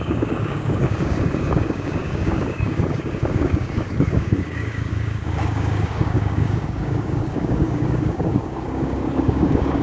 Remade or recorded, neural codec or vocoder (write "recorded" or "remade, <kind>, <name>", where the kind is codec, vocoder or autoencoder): remade, codec, DAC